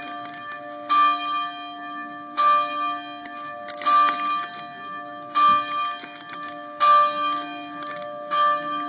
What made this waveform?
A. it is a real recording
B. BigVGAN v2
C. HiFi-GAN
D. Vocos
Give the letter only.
A